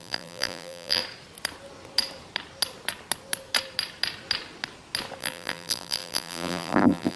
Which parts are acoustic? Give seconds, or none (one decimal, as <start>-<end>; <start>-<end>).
1.0-5.2